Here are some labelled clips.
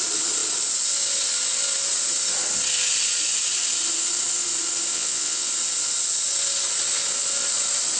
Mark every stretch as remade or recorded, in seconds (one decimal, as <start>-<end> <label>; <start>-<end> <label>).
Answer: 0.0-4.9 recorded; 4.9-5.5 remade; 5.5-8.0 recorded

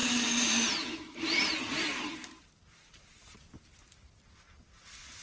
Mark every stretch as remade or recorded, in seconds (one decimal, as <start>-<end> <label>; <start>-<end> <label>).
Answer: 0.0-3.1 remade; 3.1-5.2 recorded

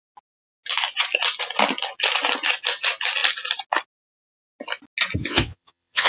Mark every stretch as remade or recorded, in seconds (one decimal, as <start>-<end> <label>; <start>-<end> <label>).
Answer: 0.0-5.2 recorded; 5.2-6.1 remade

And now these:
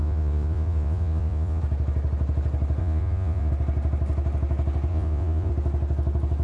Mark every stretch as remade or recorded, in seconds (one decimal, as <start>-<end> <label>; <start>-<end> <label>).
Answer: 0.0-1.6 remade; 1.6-2.8 recorded; 2.8-3.5 remade; 3.5-4.9 recorded; 4.9-5.5 remade; 5.5-6.4 recorded